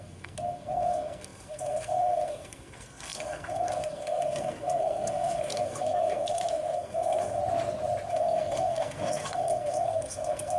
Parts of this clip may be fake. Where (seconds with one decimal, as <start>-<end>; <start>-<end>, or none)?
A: 0.0-7.4; 8.1-10.6